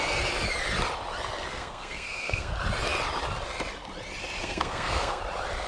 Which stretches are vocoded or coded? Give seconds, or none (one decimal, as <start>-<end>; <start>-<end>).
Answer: 1.5-2.5; 4.4-5.2